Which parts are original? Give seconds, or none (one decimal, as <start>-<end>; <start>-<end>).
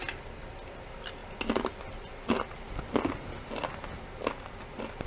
0.0-5.1